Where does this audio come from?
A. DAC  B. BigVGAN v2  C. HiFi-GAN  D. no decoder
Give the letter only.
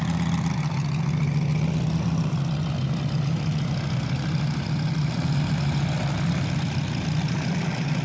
D